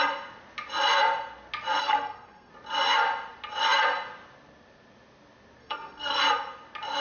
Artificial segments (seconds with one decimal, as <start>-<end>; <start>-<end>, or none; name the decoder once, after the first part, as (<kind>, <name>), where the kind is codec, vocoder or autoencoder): 1.8-2.5 (codec, SNAC); 5.6-6.2